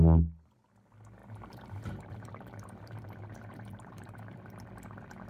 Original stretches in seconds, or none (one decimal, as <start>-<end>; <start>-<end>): 0.0-1.2; 4.4-5.3